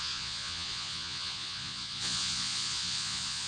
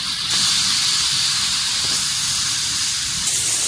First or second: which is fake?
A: first